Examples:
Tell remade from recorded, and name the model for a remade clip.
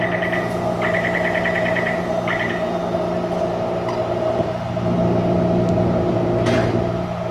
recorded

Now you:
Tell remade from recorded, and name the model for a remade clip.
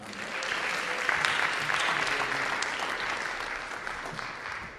recorded